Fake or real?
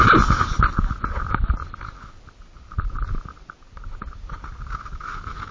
real